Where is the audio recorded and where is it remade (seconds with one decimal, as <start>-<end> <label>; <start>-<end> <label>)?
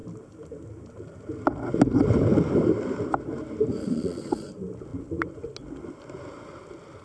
0.0-3.8 recorded; 3.8-4.5 remade; 4.5-7.0 recorded